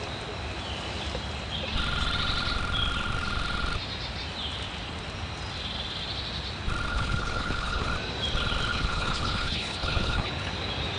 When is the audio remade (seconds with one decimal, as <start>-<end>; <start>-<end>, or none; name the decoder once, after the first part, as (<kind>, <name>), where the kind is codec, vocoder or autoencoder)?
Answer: 6.9-7.9 (codec, HILCodec); 8.7-10.5